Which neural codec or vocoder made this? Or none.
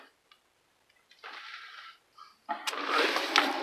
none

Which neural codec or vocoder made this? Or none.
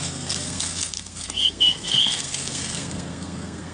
codec, SNAC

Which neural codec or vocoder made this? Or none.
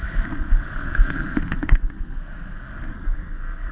codec, SNAC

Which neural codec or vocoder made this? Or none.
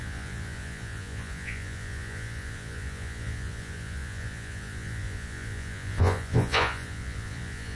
vocoder, Vocos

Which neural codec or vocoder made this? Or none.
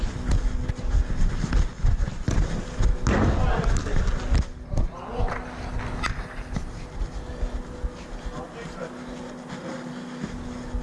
none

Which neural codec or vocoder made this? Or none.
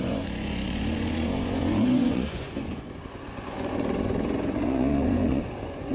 vocoder, Vocos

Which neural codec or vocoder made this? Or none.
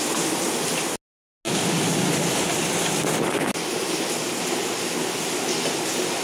none